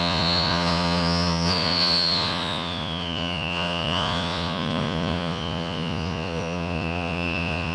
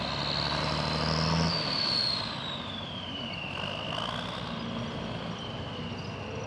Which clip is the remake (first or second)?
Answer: first